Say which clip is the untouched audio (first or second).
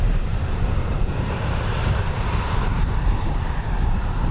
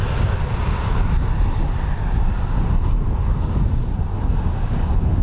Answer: second